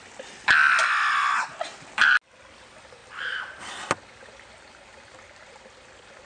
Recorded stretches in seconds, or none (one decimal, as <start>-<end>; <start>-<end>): 0.0-6.3